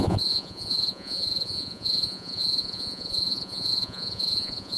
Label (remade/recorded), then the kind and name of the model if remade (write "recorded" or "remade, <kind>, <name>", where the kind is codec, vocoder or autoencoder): remade, vocoder, Vocos